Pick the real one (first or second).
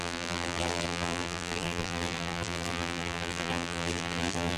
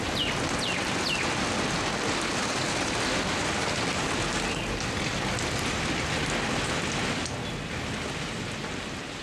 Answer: second